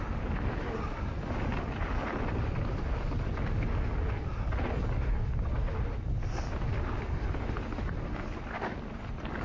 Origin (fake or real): real